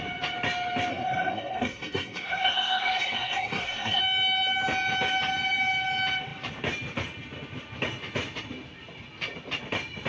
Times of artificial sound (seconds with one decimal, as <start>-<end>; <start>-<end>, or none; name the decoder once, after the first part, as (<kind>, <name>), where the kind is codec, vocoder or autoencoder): 0.9-4.0 (codec, SNAC)